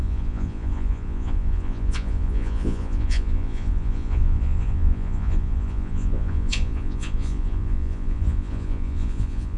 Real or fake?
fake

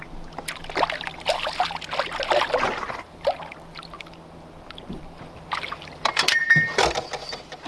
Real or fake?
real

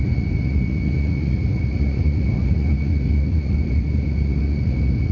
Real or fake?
fake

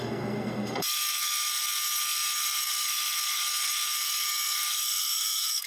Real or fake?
fake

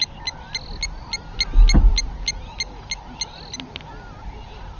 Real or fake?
real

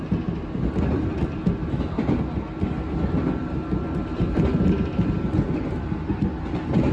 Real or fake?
real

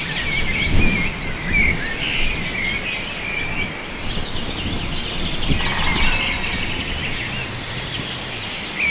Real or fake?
real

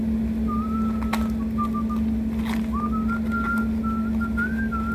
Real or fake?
real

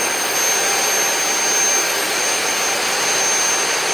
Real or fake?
real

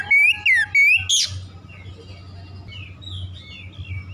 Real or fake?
real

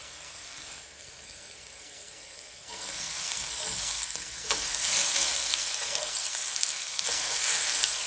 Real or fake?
fake